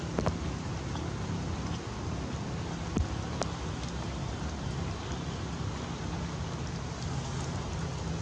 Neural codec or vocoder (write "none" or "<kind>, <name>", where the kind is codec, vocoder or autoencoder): none